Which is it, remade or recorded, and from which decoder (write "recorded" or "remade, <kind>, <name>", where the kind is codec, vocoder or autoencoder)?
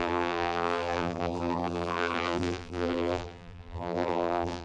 remade, vocoder, BigVGAN v2